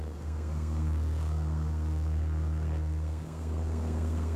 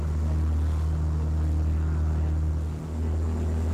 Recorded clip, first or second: second